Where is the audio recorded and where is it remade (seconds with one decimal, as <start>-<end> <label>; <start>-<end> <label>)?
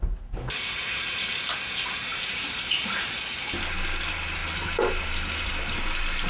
0.0-2.1 recorded; 2.1-3.2 remade; 3.2-6.3 recorded